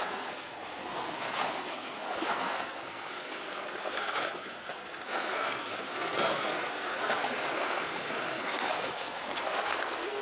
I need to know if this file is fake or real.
fake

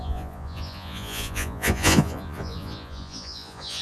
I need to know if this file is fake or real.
fake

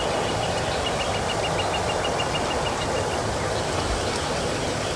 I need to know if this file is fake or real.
real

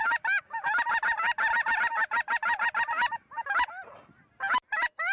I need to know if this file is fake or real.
real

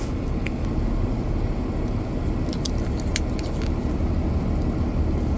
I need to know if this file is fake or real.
real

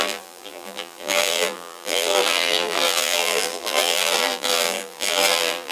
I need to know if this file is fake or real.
fake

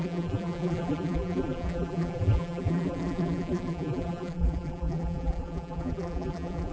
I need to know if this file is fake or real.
fake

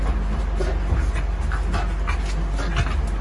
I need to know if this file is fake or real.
real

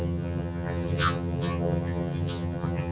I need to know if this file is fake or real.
fake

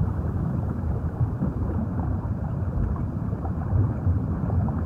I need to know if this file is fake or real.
fake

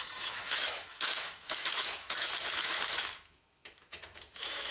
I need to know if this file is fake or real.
fake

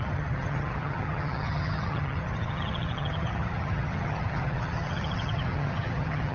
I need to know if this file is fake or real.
fake